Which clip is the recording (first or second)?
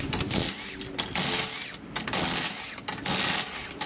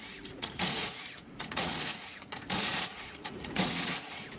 first